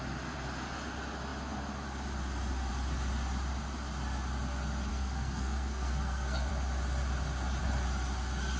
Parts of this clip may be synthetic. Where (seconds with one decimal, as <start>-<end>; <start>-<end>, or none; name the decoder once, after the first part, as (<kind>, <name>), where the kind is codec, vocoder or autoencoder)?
4.9-6.5 (codec, SNAC)